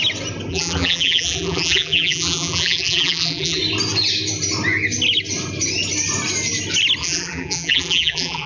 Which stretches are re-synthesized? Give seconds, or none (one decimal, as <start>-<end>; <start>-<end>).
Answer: 0.5-3.6; 7.0-8.5